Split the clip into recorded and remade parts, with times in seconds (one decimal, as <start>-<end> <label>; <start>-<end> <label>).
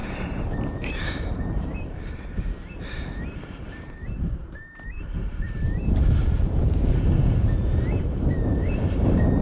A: 0.0-9.4 remade